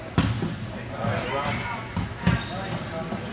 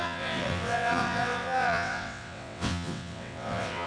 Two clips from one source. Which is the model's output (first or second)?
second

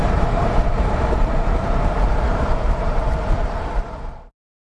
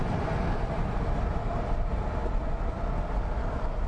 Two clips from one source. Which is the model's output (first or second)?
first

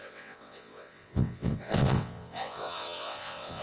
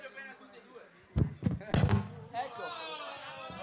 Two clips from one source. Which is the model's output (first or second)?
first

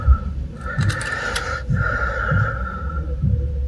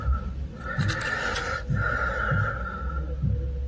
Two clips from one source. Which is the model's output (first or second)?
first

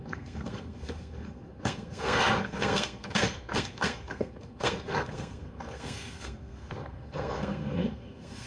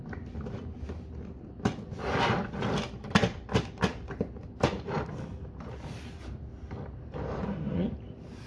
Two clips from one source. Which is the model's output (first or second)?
first